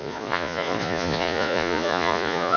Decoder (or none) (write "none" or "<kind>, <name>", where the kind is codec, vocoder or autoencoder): vocoder, Vocos